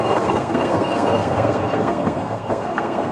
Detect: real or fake fake